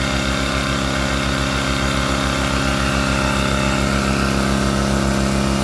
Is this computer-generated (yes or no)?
no